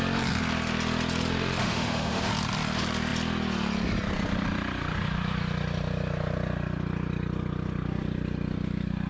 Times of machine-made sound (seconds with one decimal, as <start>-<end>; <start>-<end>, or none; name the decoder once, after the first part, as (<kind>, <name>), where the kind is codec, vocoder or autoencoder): 1.6-2.3 (autoencoder, DAC-VAE)